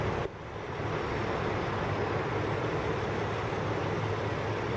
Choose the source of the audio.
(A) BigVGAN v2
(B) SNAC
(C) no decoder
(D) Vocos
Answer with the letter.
C